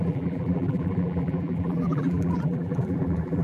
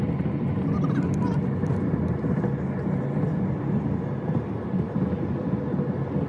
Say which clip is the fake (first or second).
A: first